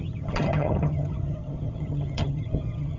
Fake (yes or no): yes